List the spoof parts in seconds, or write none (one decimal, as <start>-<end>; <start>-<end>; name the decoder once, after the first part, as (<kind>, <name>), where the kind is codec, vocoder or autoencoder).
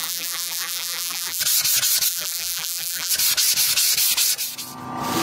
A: 0.0-1.4 (vocoder, BigVGAN v2); 2.1-3.1